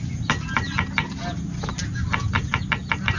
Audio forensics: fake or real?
real